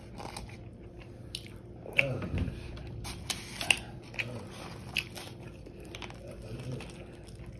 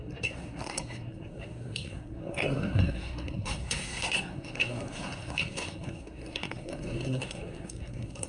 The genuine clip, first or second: first